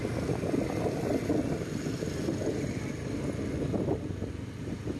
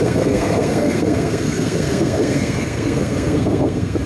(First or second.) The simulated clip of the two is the second